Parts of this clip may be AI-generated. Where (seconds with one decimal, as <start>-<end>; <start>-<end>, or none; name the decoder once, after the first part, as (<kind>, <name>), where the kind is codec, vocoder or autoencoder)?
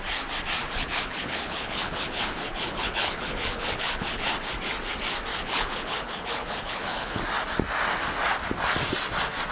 0.6-4.3 (codec, HILCodec); 5.3-7.2